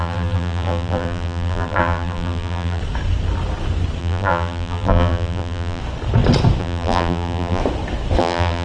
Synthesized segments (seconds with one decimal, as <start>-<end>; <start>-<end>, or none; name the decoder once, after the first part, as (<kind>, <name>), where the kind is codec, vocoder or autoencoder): 0.0-2.8 (vocoder, BigVGAN v2); 4.0-5.8; 6.6-7.6; 8.2-8.6